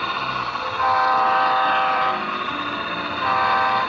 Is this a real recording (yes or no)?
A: yes